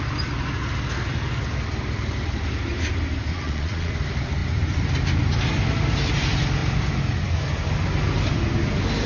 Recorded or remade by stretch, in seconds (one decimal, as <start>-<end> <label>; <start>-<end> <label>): 0.0-3.3 recorded; 3.3-3.9 remade; 3.9-9.1 recorded